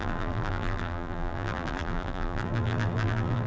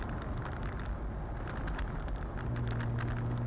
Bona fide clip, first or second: second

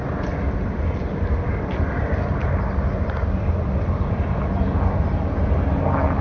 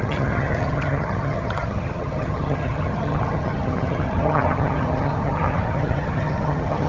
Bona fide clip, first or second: first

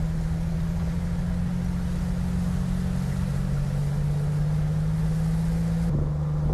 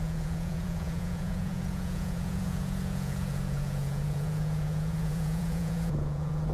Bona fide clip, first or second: first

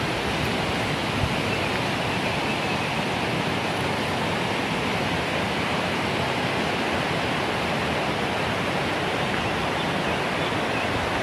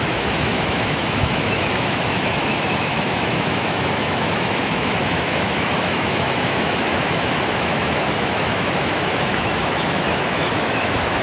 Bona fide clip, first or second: first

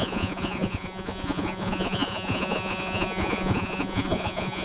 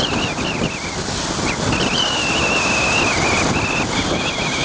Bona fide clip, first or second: second